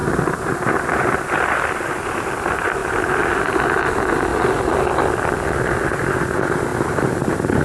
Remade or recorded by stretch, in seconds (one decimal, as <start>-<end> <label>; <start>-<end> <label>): 0.0-2.8 recorded; 2.8-3.4 remade; 3.4-4.3 recorded; 4.3-4.8 remade; 4.8-6.7 recorded; 6.7-7.6 remade